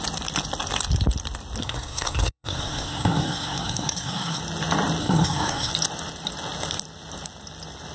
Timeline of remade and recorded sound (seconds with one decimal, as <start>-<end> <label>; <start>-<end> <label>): 0.0-1.6 recorded; 1.6-4.4 remade; 4.4-5.0 recorded; 5.0-5.7 remade; 5.7-7.9 recorded